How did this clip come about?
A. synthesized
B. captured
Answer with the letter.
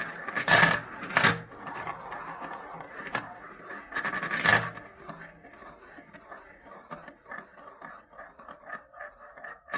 B